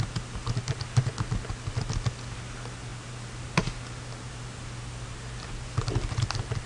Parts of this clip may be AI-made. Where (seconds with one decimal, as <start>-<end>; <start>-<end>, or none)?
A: none